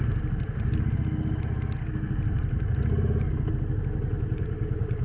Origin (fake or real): real